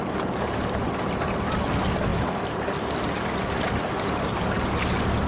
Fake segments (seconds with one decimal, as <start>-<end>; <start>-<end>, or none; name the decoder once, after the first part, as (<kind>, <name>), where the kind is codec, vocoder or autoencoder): none